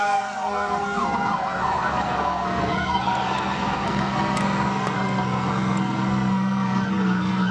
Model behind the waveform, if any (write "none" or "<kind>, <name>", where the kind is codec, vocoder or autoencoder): codec, SNAC